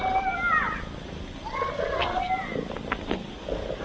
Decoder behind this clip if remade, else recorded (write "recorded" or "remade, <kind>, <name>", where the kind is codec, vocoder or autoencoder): recorded